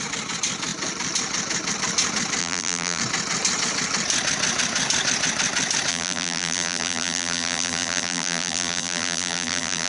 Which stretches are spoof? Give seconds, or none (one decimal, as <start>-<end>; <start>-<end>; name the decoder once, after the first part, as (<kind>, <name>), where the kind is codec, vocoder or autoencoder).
2.4-3.0 (vocoder, BigVGAN v2); 5.9-9.9